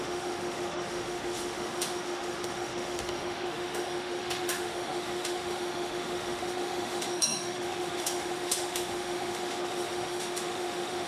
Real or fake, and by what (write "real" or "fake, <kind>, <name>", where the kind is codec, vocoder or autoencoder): fake, autoencoder, DAC-VAE